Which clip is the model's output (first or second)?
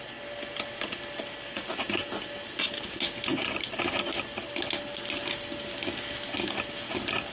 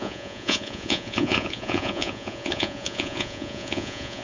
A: second